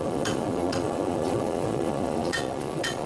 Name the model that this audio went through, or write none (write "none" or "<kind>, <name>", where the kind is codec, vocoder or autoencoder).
vocoder, Vocos